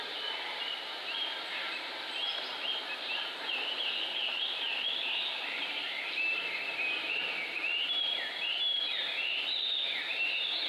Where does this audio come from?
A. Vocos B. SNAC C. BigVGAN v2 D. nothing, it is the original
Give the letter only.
C